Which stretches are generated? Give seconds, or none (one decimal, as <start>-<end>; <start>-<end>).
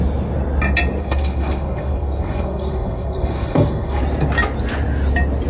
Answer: 1.0-4.0